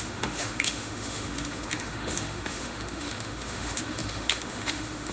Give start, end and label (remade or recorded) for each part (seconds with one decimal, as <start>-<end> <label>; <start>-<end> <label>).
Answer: 0.0-5.1 remade